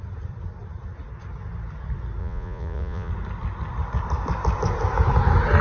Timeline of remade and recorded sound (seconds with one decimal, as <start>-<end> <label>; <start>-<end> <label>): 0.0-2.2 recorded; 2.2-3.1 remade; 3.1-5.6 recorded